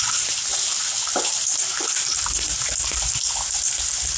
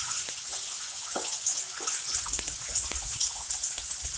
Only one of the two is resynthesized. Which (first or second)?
second